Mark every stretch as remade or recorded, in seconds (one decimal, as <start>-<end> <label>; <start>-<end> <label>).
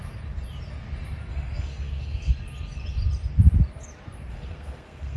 0.0-1.3 recorded; 1.3-2.3 remade; 2.3-4.3 recorded; 4.3-5.2 remade